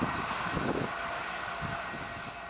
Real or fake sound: real